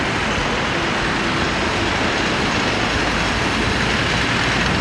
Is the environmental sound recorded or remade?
recorded